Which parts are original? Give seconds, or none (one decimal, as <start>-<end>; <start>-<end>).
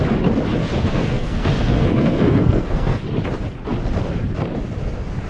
0.0-0.6; 3.0-5.3